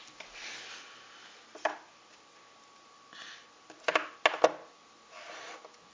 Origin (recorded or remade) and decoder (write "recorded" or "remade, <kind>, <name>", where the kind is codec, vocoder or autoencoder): recorded